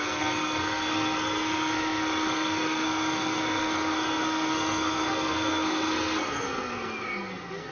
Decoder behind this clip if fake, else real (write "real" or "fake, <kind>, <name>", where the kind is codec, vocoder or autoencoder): fake, codec, SNAC